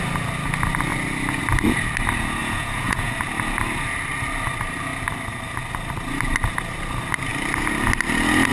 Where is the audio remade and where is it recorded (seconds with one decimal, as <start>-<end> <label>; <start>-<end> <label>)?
0.0-2.4 recorded; 2.4-3.1 remade; 3.1-8.5 recorded